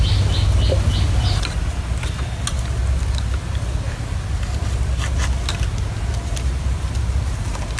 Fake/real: real